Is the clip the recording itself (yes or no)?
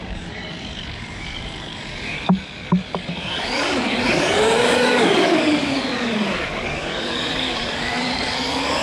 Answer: no